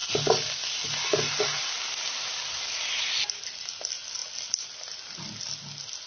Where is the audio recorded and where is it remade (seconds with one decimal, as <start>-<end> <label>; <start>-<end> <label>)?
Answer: 0.0-6.1 recorded